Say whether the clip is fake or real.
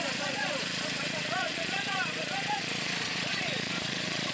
fake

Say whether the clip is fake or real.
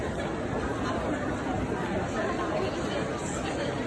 real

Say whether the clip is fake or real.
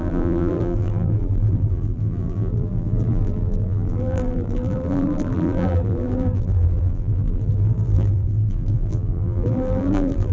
fake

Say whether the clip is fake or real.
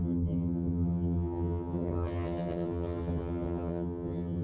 fake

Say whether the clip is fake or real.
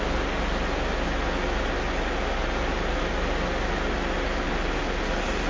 real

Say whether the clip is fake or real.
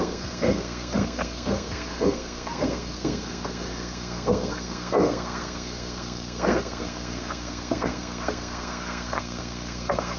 fake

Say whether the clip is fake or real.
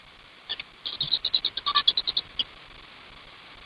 real